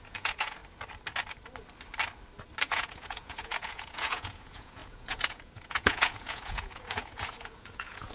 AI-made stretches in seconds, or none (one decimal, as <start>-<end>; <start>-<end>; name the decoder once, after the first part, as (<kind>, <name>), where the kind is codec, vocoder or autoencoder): 0.0-0.6 (vocoder, Vocos); 2.6-8.1